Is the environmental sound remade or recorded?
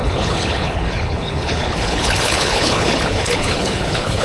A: remade